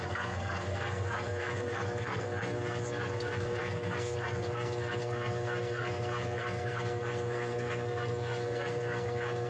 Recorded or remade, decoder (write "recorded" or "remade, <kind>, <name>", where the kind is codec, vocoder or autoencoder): remade, codec, SNAC